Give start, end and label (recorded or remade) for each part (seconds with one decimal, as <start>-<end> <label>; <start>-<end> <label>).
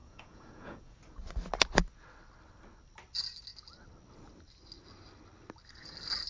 0.0-1.0 remade; 1.0-6.3 recorded